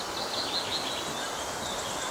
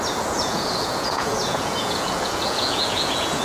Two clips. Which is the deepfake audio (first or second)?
second